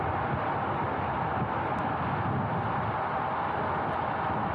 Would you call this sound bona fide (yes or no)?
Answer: yes